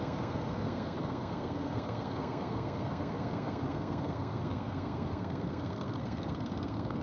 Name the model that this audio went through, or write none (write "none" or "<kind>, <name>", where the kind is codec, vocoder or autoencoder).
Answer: codec, SNAC